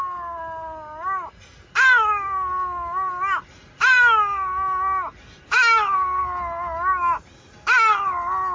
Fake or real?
real